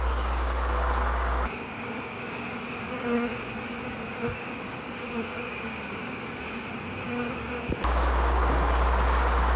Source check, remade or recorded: remade